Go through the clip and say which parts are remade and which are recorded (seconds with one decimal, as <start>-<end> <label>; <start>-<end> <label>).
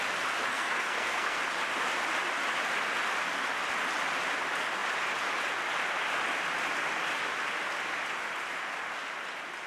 0.0-0.5 recorded; 0.5-1.4 remade; 1.4-9.7 recorded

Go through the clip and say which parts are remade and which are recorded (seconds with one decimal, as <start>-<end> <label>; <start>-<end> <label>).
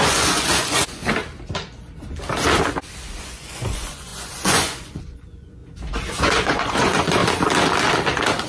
0.0-1.0 remade; 1.0-3.2 recorded; 3.2-5.6 remade; 5.6-6.1 recorded; 6.1-7.2 remade; 7.2-8.5 recorded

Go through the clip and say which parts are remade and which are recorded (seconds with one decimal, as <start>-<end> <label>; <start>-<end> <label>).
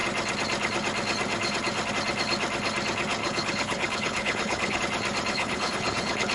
0.0-3.2 recorded; 3.2-4.8 remade; 4.8-5.3 recorded; 5.3-6.3 remade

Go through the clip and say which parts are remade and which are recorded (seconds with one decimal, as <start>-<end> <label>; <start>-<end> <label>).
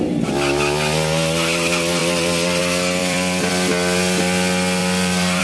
0.0-2.0 recorded; 2.0-2.6 remade; 2.6-3.0 recorded; 3.0-3.5 remade; 3.5-4.8 recorded; 4.8-5.4 remade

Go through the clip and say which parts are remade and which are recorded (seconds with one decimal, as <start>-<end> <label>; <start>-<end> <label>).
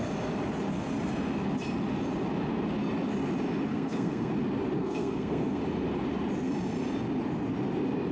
0.0-3.7 recorded; 3.7-4.3 remade; 4.3-4.8 recorded; 4.8-5.6 remade; 5.6-8.1 recorded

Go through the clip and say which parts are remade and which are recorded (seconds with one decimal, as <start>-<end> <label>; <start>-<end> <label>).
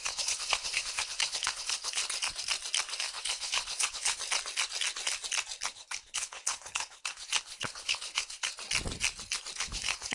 0.0-2.0 remade; 2.0-3.0 recorded; 3.0-4.2 remade; 4.2-5.7 recorded; 5.7-8.5 remade; 8.5-9.6 recorded; 9.6-10.1 remade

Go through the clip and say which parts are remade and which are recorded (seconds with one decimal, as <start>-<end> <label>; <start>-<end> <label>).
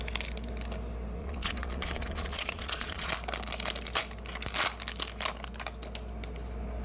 0.0-1.2 recorded; 1.2-3.1 remade; 3.1-6.8 recorded